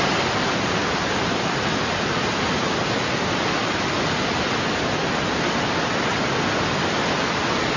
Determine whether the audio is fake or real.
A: real